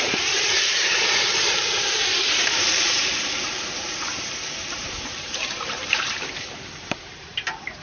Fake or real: fake